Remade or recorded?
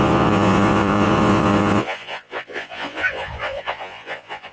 remade